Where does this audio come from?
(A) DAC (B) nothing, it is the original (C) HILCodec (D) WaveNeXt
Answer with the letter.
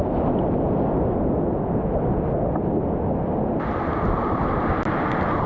B